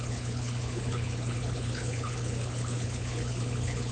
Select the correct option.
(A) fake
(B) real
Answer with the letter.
A